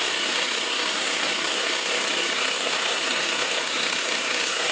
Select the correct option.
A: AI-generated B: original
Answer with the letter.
A